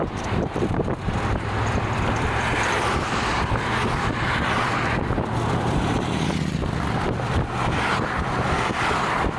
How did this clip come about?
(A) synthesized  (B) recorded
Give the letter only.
A